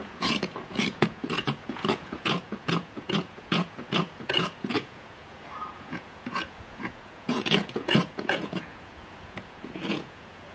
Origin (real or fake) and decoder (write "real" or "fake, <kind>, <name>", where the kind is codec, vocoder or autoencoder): fake, vocoder, Vocos